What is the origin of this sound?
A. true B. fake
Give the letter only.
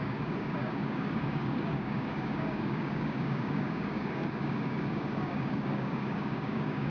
B